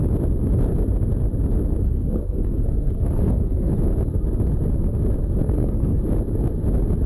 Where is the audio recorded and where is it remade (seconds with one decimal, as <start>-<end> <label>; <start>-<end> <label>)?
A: 0.0-1.7 recorded; 1.7-3.7 remade; 3.7-5.4 recorded; 5.4-6.0 remade; 6.0-7.1 recorded